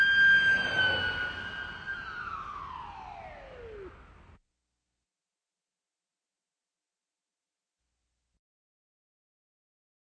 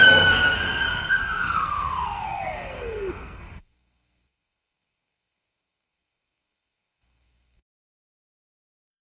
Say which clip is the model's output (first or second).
second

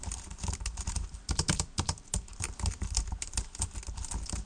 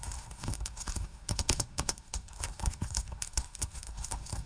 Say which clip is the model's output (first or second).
second